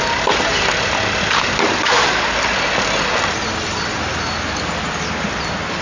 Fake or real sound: real